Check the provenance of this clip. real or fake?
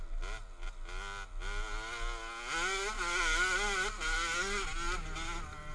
real